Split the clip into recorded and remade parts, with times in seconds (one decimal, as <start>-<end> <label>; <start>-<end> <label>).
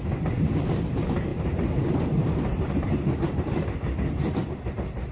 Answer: 0.0-1.3 recorded; 1.3-3.5 remade; 3.5-5.1 recorded